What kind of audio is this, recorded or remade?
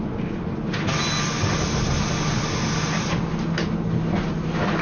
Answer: recorded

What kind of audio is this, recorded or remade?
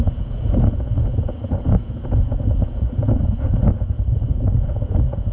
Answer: remade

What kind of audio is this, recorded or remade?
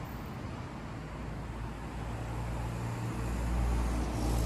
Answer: recorded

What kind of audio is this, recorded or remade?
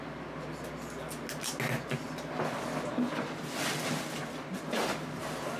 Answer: recorded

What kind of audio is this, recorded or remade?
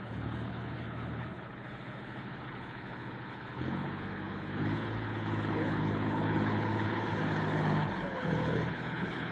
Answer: remade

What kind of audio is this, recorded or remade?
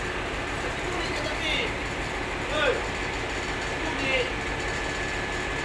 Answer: recorded